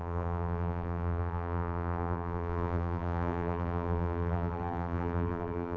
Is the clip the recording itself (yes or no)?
no